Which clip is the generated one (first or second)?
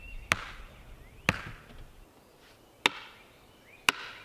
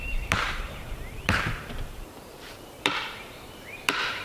second